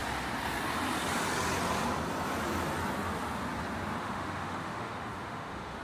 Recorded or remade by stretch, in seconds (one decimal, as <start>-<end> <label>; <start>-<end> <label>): 0.0-4.0 recorded; 4.0-5.8 remade